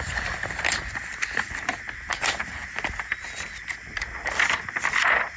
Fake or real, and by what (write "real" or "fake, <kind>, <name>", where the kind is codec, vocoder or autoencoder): real